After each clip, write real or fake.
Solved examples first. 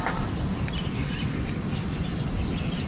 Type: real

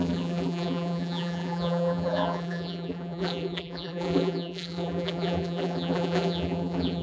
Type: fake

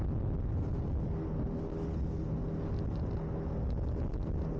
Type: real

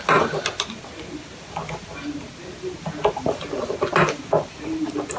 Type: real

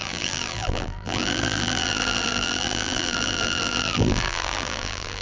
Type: fake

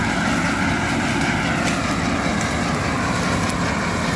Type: real